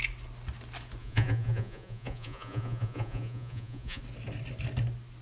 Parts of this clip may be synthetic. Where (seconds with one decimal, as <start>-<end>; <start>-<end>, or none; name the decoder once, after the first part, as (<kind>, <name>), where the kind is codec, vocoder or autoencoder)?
1.0-4.0 (vocoder, Vocos)